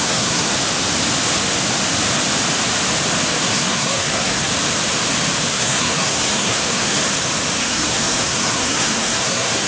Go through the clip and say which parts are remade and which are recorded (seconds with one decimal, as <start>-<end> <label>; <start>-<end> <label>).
0.0-0.5 remade; 0.5-3.4 recorded; 3.4-4.5 remade; 4.5-5.5 recorded; 5.5-7.0 remade; 7.0-7.6 recorded; 7.6-9.7 remade